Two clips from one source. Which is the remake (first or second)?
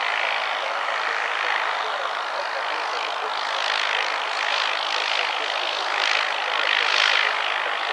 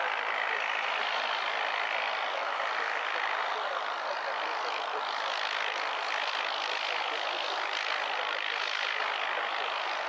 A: second